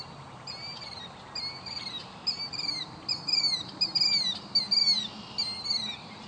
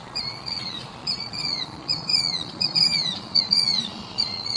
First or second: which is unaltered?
first